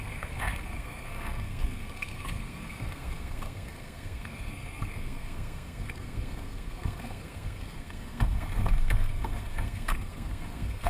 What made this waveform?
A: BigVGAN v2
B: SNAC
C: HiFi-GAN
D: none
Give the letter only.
B